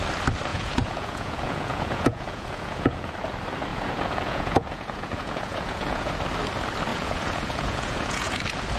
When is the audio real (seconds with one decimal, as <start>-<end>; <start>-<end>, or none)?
0.0-0.5; 3.1-3.7; 6.1-6.9; 8.4-8.8